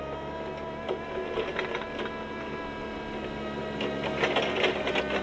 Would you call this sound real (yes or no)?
yes